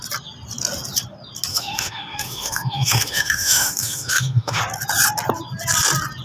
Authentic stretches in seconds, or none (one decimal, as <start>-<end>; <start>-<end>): 0.0-1.5; 4.6-6.2